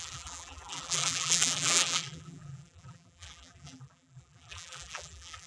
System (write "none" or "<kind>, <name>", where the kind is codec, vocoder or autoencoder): vocoder, BigVGAN v2